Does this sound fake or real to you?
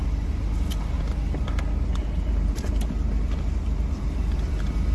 real